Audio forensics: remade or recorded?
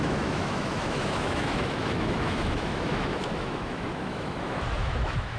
remade